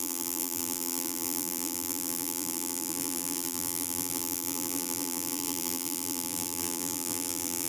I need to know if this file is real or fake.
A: fake